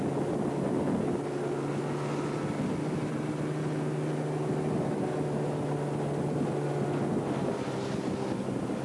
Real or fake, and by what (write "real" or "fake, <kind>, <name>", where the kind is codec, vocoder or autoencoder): real